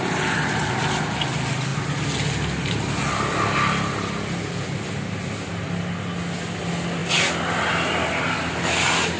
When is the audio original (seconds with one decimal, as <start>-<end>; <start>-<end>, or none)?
0.0-9.2